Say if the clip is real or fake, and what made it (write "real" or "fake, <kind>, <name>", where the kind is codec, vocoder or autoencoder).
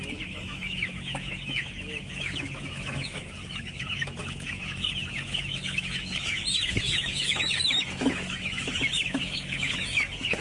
fake, autoencoder, DAC-VAE